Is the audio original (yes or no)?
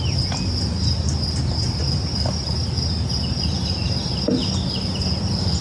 yes